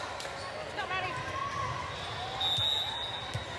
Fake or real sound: real